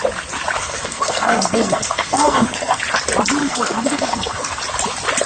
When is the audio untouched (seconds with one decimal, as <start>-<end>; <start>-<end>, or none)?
0.0-0.6; 2.8-3.4; 4.6-5.3